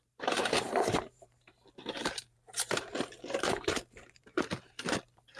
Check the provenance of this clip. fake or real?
fake